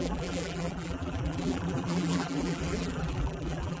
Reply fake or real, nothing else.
fake